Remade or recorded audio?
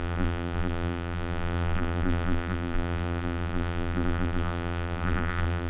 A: remade